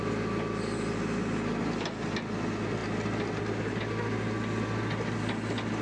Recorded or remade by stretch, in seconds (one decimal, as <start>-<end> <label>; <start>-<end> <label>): 0.0-5.8 recorded